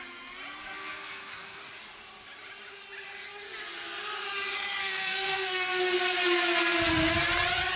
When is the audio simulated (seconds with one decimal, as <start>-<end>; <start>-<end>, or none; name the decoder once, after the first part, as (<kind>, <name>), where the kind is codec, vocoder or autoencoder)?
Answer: 0.6-1.6 (codec, SNAC); 4.8-5.8